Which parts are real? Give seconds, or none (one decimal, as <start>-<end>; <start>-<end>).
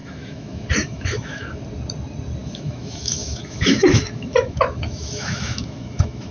1.6-2.4